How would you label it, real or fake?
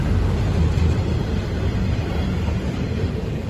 fake